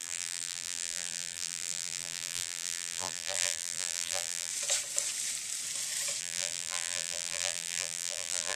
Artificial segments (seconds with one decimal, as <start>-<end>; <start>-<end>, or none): 0.0-4.5; 6.2-8.6

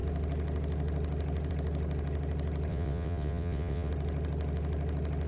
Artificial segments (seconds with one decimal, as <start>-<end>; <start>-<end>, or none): 2.7-3.9

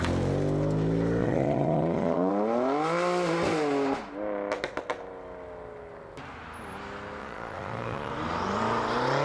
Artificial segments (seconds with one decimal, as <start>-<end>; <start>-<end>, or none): 1.2-2.3; 7.2-8.1

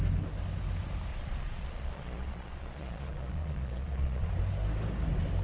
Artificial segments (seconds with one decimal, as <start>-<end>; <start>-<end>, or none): 1.1-4.3

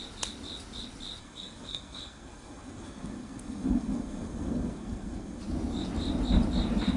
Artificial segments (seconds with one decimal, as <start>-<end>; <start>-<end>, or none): 1.2-5.4

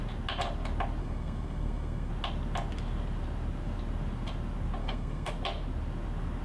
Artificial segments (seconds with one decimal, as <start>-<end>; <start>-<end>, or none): 1.0-2.1; 4.8-5.3